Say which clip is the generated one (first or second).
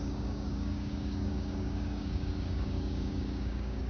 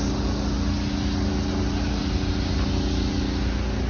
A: first